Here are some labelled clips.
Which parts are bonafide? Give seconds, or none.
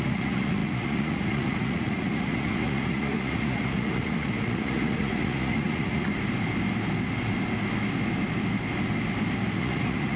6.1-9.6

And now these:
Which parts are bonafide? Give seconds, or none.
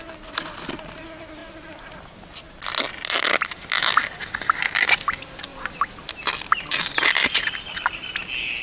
0.0-5.5; 7.5-8.6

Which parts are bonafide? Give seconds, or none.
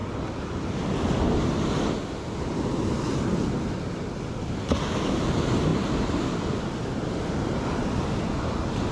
0.0-8.9